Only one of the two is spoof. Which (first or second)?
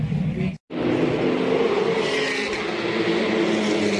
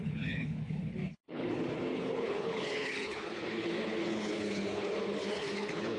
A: second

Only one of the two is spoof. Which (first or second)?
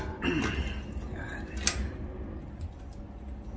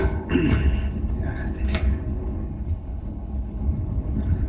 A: second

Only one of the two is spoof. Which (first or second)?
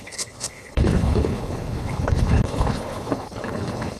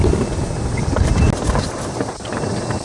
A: first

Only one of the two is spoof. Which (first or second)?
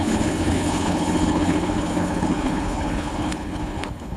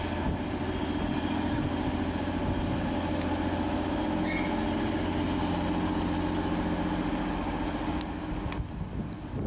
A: first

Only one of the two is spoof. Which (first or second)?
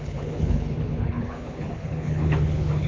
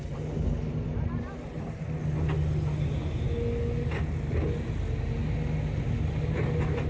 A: first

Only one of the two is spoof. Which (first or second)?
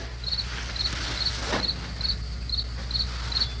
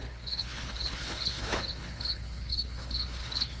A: second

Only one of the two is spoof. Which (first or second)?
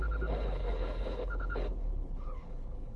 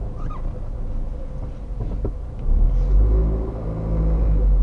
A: first